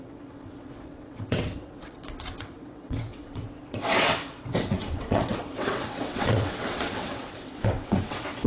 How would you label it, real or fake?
fake